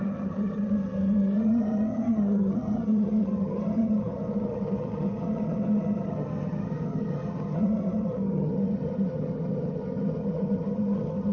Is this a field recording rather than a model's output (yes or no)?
no